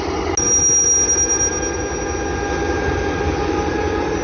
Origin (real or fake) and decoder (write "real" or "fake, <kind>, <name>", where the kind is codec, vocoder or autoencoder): real